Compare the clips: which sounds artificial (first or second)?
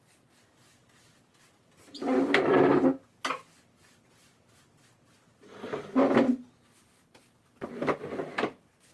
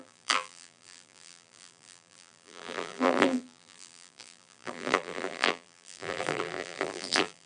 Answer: second